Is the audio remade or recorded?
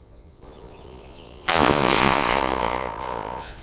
remade